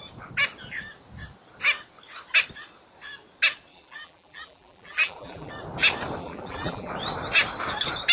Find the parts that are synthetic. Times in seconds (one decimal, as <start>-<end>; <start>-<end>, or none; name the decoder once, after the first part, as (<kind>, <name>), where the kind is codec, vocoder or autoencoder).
3.7-5.5 (vocoder, BigVGAN v2); 6.2-6.9